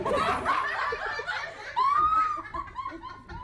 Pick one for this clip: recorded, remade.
recorded